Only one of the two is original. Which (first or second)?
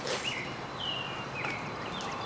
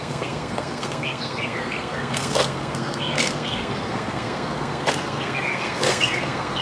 first